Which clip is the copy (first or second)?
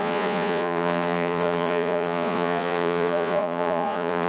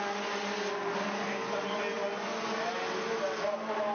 first